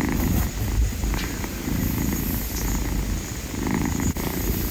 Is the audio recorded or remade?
recorded